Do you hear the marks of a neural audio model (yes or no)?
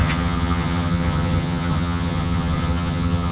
yes